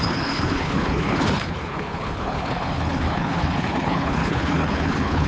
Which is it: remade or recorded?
remade